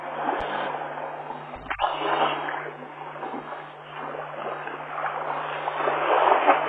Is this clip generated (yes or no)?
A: no